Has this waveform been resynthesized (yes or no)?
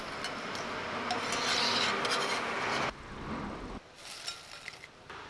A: no